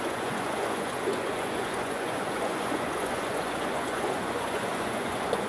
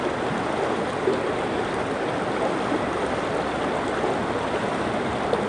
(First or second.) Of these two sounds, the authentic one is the second